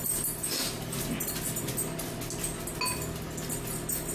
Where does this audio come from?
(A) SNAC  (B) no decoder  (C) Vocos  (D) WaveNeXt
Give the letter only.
B